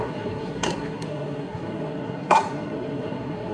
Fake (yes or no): yes